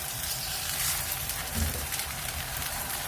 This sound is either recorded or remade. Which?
remade